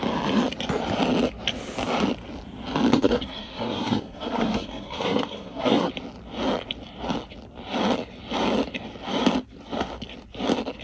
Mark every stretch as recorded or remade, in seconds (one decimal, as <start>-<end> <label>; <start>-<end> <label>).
0.0-2.9 recorded; 2.9-5.9 remade; 5.9-10.8 recorded